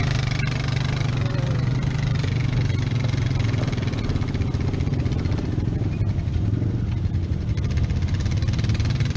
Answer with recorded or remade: recorded